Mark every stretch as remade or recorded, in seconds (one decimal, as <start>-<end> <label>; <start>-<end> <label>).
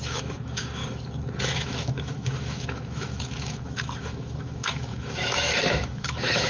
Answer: 0.0-0.8 remade; 0.8-1.4 recorded; 1.4-6.5 remade